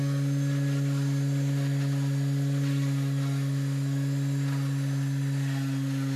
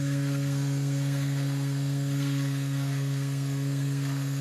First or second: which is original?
first